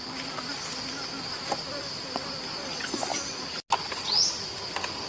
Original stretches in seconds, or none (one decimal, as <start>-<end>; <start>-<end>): 0.0-5.1